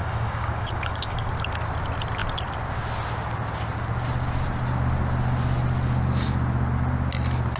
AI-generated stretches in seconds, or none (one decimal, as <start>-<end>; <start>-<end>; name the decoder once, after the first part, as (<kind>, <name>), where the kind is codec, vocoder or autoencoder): 0.0-1.3 (codec, DAC)